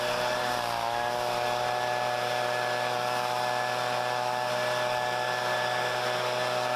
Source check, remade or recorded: recorded